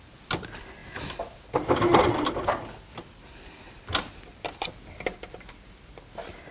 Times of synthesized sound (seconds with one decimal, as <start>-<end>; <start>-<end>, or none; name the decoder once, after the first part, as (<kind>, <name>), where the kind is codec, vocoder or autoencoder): none